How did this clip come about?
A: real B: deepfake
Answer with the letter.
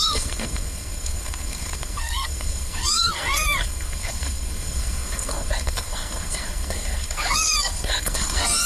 B